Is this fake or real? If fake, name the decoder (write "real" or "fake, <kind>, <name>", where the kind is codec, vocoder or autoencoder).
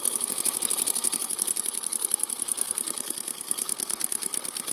fake, codec, SNAC